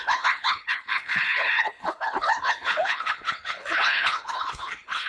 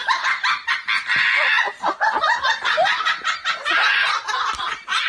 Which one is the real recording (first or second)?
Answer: second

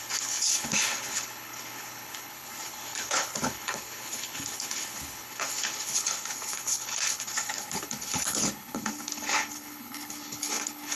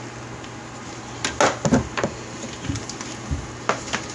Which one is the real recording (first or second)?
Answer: second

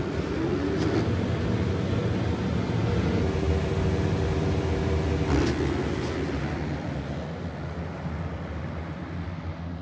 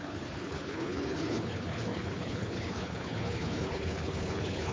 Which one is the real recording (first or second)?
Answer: first